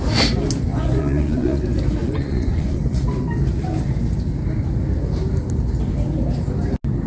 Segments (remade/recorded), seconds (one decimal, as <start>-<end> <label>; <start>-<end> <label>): 0.0-0.7 recorded; 0.7-1.6 remade; 1.6-2.0 recorded; 2.0-3.0 remade; 3.0-7.1 recorded